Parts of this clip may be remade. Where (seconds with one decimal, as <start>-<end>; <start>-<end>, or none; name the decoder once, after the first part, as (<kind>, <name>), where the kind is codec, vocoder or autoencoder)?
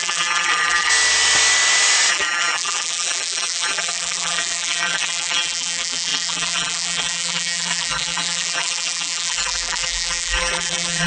0.0-0.9 (vocoder, BigVGAN v2); 2.1-11.1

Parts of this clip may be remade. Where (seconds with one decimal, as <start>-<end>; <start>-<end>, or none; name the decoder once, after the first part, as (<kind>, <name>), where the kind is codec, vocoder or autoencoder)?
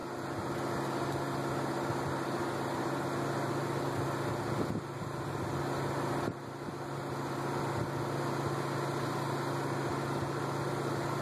none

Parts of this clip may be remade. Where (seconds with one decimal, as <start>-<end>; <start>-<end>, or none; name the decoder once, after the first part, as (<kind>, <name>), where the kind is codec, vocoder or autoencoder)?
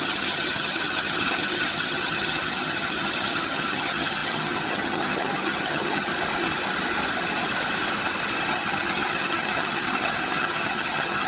0.0-6.1 (vocoder, HiFi-GAN); 8.5-11.3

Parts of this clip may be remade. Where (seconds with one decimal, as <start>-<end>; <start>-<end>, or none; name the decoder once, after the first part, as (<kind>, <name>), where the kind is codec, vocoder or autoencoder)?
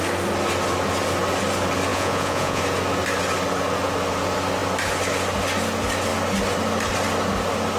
1.9-2.6 (vocoder, Vocos)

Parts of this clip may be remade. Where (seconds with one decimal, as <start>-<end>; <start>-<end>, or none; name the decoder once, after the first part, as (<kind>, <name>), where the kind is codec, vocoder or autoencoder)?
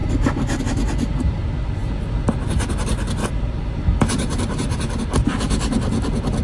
0.0-0.6 (vocoder, BigVGAN v2); 3.2-5.4